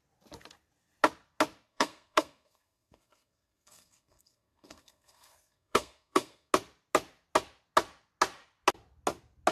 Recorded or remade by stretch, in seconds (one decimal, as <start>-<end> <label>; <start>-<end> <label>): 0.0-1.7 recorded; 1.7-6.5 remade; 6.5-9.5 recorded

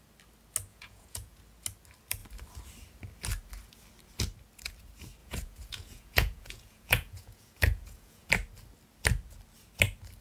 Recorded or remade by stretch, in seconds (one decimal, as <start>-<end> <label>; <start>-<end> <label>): 0.0-0.7 recorded; 0.7-1.4 remade; 1.4-5.2 recorded; 5.2-8.3 remade; 8.3-10.2 recorded

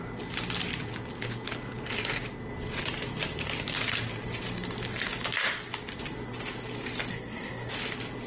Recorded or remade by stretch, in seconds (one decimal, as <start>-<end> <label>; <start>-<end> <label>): 0.0-7.1 recorded; 7.1-7.7 remade; 7.7-8.3 recorded

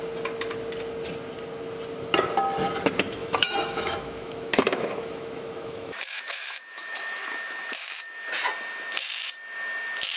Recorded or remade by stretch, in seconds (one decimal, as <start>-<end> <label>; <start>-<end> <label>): 0.0-3.2 recorded; 3.2-8.3 remade; 8.3-10.2 recorded